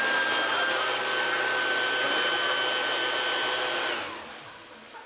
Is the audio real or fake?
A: real